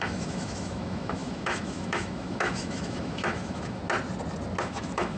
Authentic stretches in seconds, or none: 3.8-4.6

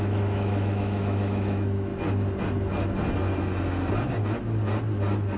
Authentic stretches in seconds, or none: 1.9-5.4

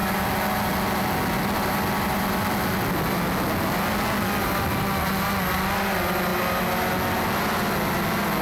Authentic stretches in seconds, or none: 0.0-8.4

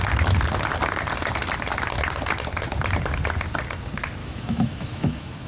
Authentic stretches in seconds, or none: 0.0-4.2